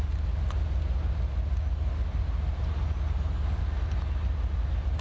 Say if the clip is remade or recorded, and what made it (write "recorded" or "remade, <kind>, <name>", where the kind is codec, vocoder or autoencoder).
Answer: recorded